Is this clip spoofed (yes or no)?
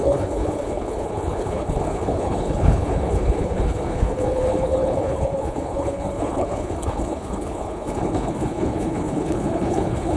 yes